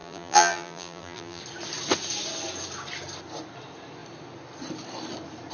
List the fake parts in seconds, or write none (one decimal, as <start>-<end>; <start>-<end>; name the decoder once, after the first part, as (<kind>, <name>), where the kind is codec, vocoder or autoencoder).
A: 0.0-1.4 (vocoder, BigVGAN v2)